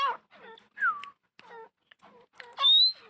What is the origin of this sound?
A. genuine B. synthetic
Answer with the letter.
A